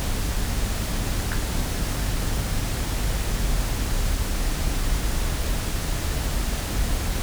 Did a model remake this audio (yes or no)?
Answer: no